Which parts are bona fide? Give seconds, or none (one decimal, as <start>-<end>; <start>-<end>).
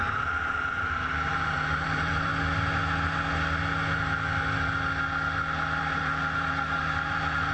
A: 2.3-5.8